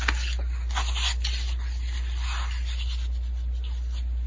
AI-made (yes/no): no